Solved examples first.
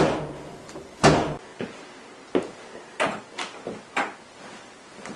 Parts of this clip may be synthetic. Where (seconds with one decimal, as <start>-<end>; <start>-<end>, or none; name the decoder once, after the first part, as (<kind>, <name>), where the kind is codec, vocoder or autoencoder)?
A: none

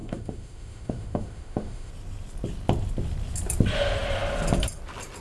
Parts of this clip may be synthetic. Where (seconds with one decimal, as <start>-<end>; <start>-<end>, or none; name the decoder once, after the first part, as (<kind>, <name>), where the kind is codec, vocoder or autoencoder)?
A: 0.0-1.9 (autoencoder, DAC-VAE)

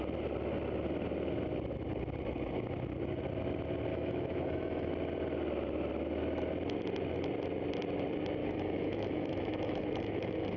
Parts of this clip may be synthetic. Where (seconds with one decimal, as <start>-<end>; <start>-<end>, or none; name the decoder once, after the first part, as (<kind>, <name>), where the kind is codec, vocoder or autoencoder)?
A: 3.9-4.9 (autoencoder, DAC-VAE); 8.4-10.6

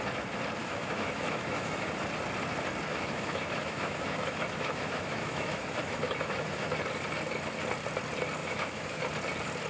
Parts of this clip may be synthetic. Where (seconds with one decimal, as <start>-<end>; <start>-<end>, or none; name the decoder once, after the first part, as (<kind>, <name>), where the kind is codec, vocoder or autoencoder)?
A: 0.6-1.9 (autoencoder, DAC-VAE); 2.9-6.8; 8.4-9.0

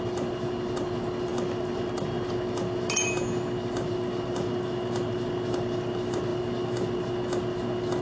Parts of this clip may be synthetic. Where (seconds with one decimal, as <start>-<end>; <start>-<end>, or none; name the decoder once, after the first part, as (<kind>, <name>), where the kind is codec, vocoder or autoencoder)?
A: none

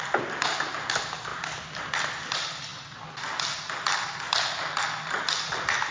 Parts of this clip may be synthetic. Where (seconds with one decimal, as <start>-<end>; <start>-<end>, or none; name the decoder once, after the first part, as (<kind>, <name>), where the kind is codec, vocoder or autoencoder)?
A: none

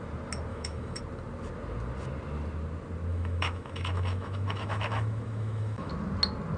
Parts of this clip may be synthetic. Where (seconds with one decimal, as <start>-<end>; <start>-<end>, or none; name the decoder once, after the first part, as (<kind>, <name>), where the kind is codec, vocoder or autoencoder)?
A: 0.5-1.0 (autoencoder, DAC-VAE); 3.1-5.9

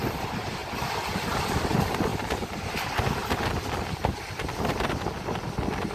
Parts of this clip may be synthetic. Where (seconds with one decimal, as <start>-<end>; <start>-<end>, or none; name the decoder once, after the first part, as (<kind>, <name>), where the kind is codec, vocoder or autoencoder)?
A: none